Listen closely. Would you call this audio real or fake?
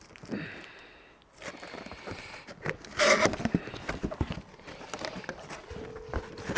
real